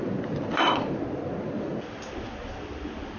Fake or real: fake